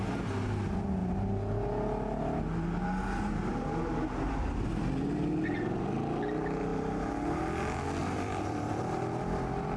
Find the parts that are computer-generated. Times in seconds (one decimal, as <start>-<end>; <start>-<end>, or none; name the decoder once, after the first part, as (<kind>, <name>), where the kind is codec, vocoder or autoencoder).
8.0-9.8 (vocoder, BigVGAN v2)